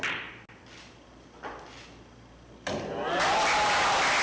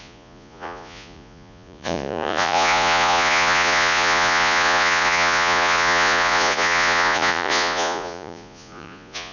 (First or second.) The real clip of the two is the first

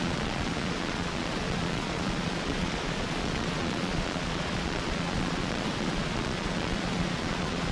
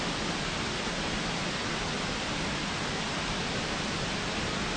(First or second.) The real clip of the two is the second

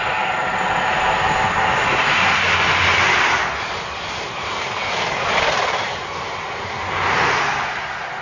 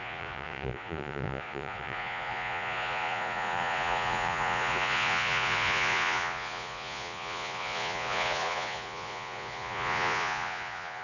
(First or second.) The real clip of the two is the first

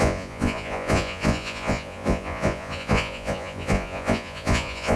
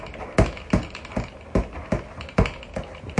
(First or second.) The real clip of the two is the second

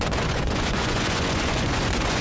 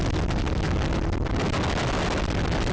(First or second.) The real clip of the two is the second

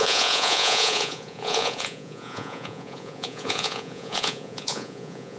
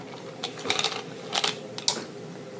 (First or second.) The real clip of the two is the second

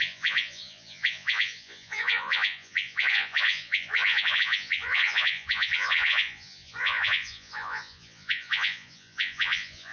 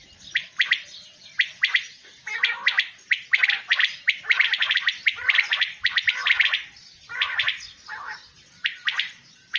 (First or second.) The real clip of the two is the second